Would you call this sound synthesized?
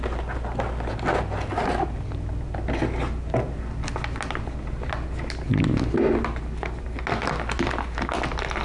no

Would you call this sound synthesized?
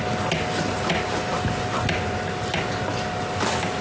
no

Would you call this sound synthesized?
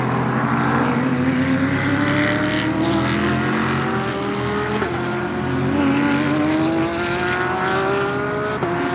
no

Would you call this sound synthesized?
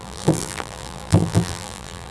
yes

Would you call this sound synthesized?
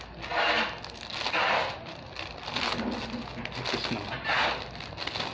no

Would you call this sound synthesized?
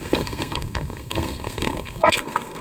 yes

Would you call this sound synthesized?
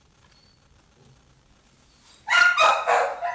no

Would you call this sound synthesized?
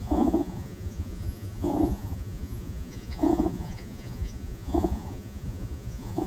yes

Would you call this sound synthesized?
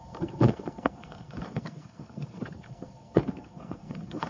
yes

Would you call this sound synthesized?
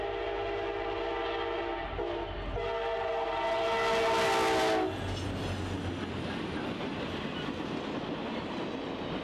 no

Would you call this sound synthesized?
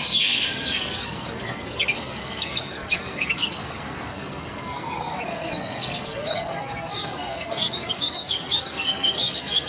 yes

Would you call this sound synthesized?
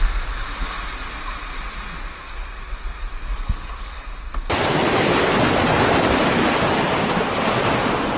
no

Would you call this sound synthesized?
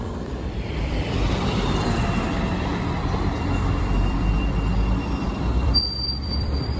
yes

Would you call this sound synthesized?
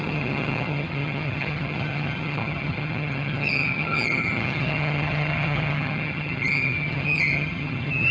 yes